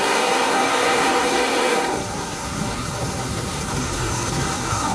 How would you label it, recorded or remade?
remade